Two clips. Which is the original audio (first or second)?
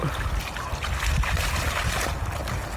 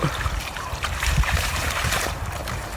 first